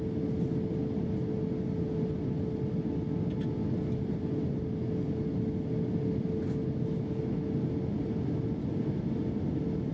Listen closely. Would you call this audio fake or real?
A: real